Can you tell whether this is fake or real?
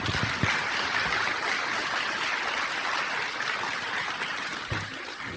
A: real